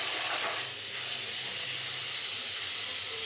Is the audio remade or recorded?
recorded